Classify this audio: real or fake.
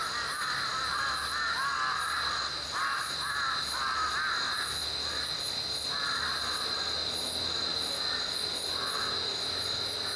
real